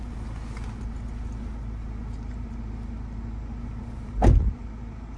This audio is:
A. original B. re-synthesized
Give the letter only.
A